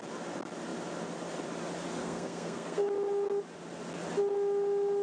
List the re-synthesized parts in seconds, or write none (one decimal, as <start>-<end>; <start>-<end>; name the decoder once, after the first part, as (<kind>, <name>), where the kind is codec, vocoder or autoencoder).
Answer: 2.0-2.9 (codec, SNAC)